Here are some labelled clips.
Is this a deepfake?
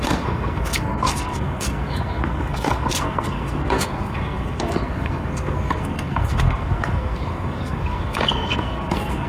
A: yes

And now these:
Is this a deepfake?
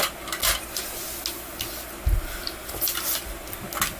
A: no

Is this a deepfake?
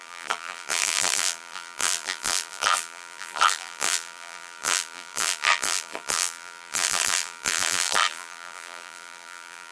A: yes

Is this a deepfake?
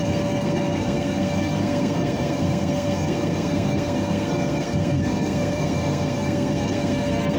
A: yes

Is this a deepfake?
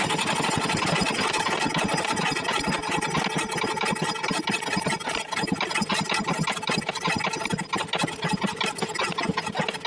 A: no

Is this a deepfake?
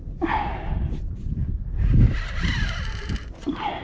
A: no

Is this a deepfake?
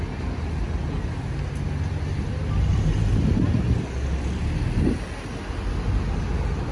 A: no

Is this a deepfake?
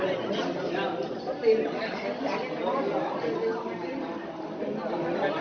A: no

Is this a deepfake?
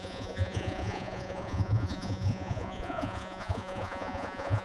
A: yes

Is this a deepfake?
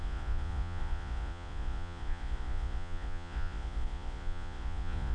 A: yes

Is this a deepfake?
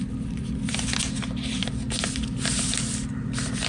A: no